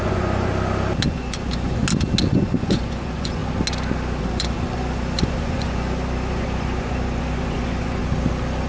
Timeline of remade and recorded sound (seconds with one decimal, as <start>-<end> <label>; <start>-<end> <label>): 0.0-0.5 remade; 0.5-1.1 recorded; 1.1-1.8 remade; 1.8-2.3 recorded; 2.3-3.4 remade; 3.4-4.2 recorded; 4.2-8.0 remade; 8.0-8.7 recorded